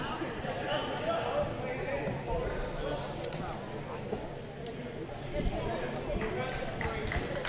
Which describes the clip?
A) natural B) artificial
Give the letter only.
A